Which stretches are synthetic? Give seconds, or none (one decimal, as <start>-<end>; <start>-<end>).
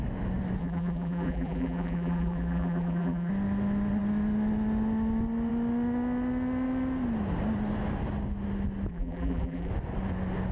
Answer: 0.6-3.3; 8.9-9.7